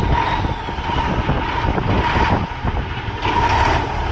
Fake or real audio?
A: real